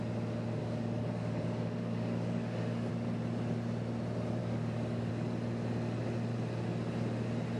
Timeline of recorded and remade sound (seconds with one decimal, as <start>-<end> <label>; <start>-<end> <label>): 0.0-0.6 recorded; 0.6-2.9 remade; 2.9-4.4 recorded; 4.4-5.1 remade; 5.1-7.6 recorded